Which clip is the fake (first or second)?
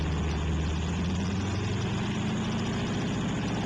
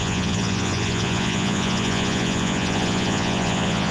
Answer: second